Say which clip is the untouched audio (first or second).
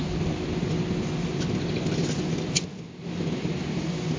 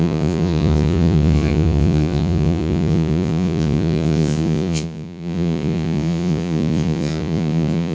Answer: first